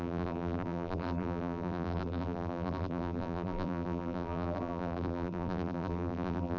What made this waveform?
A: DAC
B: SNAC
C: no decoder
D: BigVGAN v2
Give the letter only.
D